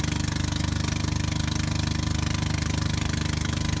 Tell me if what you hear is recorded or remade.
recorded